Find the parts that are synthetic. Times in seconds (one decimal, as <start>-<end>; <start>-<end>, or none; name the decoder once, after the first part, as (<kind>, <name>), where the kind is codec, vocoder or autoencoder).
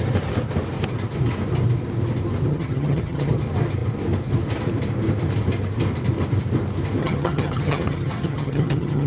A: 2.5-3.3 (vocoder, HiFi-GAN); 7.0-9.1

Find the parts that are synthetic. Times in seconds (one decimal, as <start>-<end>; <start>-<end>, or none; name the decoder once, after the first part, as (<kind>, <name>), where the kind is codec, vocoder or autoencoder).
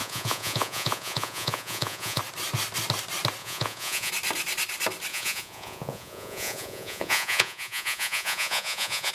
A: 0.0-2.2 (vocoder, Vocos); 3.4-4.1; 5.1-9.1